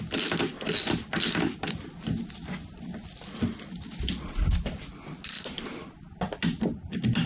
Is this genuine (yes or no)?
yes